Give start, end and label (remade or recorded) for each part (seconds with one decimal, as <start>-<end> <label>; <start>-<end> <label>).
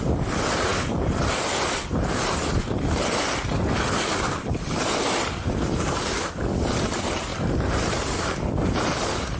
0.0-0.7 remade; 0.7-1.4 recorded; 1.4-7.3 remade; 7.3-8.0 recorded; 8.0-9.4 remade